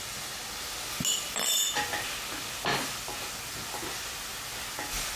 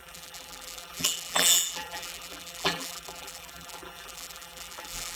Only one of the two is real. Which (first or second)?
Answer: first